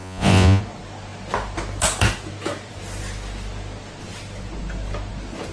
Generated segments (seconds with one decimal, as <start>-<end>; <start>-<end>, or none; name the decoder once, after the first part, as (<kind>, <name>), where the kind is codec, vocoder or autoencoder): 0.0-0.6 (vocoder, Vocos)